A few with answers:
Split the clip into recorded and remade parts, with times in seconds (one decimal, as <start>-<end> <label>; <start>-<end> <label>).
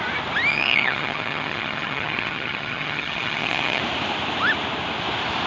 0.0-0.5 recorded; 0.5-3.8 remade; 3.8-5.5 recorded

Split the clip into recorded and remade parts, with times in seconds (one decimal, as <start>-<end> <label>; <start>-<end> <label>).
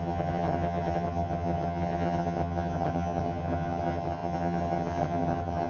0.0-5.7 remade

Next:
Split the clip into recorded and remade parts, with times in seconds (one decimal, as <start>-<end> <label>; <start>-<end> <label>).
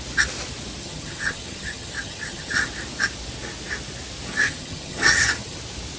0.0-0.8 recorded; 0.8-2.7 remade; 2.7-4.3 recorded; 4.3-5.6 remade; 5.6-6.0 recorded